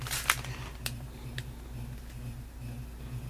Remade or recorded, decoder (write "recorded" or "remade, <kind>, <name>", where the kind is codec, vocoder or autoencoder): recorded